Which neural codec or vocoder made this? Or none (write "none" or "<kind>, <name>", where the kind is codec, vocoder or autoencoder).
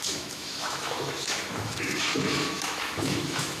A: autoencoder, DAC-VAE